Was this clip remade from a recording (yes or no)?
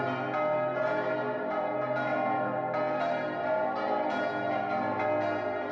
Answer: no